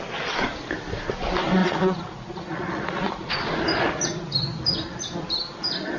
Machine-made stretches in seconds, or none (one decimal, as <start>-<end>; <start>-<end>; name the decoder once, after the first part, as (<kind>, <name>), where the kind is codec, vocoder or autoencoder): 1.6-3.3 (vocoder, Vocos)